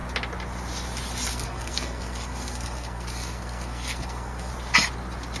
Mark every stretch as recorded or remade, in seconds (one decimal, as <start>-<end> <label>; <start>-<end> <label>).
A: 0.0-1.3 recorded; 1.3-4.5 remade; 4.5-5.4 recorded